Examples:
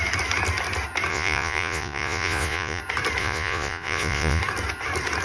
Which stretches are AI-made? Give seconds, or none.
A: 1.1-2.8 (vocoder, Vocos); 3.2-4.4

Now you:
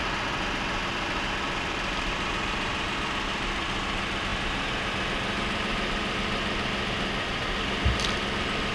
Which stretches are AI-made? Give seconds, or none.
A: none

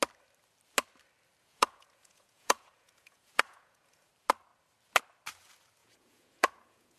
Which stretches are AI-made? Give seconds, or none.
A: 1.4-4.1 (vocoder, Vocos); 5.8-7.0